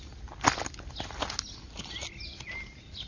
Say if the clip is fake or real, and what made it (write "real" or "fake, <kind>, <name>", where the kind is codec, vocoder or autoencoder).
real